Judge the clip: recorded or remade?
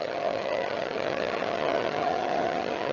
remade